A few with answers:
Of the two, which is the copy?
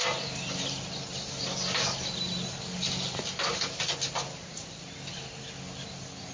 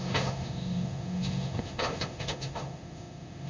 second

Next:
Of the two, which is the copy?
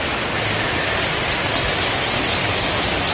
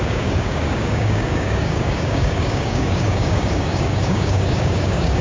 second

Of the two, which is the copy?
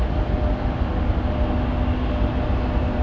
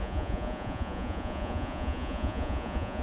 second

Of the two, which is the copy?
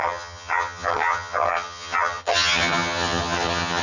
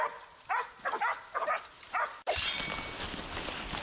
first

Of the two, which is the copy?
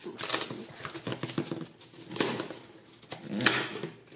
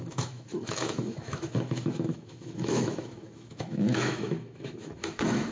second